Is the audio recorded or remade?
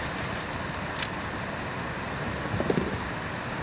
recorded